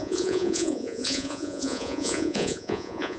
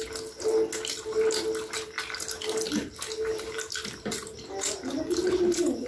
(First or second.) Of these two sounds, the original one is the second